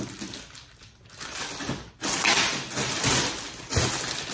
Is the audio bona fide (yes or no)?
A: yes